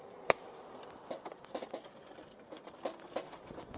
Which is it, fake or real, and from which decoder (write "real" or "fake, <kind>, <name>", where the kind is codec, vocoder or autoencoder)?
real